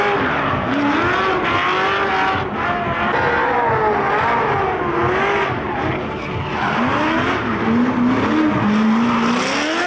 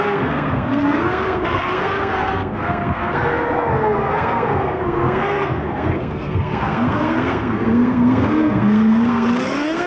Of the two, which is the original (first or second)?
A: first